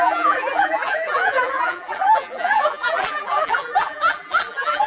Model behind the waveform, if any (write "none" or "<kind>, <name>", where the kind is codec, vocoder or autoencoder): vocoder, BigVGAN v2